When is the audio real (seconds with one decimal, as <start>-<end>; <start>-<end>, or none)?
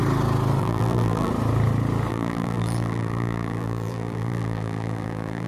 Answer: 0.0-0.6; 1.3-2.1